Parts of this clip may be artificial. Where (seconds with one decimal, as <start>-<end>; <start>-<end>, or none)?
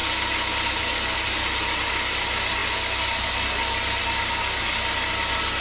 none